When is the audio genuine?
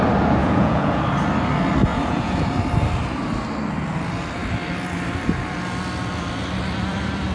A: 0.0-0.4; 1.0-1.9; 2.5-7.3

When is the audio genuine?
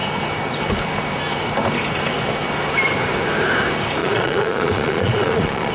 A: 0.0-4.0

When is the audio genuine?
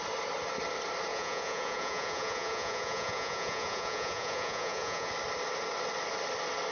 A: 0.0-1.1; 5.1-6.7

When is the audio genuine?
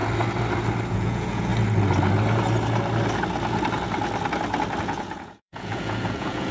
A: 0.0-0.9; 1.5-4.8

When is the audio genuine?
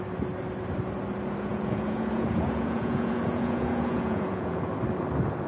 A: 0.0-1.5; 4.7-5.5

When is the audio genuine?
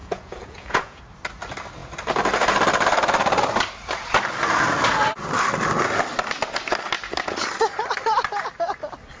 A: 1.0-9.2